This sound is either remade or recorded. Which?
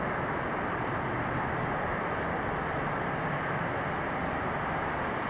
recorded